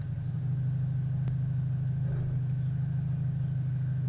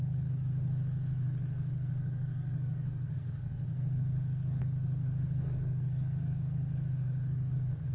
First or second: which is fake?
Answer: second